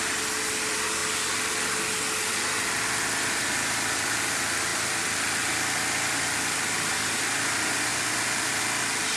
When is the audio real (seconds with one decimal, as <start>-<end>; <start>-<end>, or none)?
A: 0.0-9.2